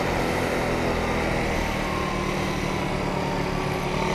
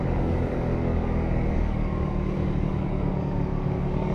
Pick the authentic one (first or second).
first